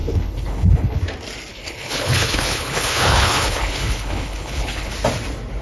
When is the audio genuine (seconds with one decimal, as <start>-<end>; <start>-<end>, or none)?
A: 1.0-1.5; 4.9-5.6